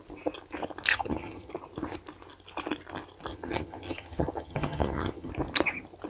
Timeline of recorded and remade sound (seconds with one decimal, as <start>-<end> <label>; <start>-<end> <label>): 0.0-0.9 recorded; 0.9-1.5 remade; 1.5-3.3 recorded; 3.3-5.3 remade; 5.3-6.1 recorded